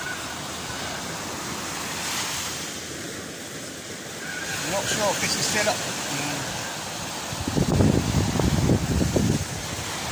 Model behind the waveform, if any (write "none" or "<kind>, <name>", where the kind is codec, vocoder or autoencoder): none